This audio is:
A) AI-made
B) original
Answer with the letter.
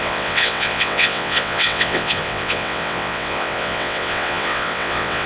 A